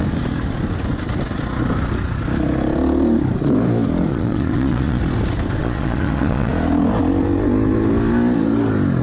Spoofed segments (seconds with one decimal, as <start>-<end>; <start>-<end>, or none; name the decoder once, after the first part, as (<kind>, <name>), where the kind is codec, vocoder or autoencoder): 4.1-5.0 (vocoder, Vocos); 5.6-6.5